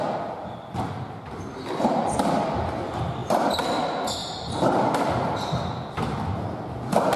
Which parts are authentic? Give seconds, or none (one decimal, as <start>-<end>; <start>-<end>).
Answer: 0.0-7.2